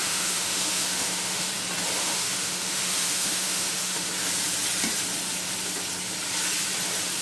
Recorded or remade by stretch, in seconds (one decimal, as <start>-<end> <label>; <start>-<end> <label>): 0.0-1.5 remade; 1.5-2.0 recorded; 2.0-4.1 remade; 4.1-7.2 recorded